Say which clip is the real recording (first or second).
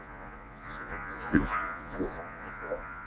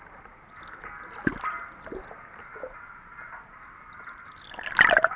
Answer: second